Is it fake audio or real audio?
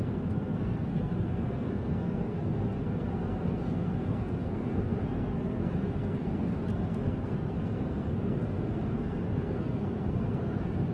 fake